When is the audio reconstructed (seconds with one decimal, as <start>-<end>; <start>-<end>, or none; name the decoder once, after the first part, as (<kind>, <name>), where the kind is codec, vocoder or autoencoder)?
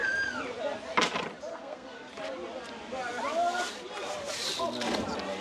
1.5-2.1 (codec, SNAC)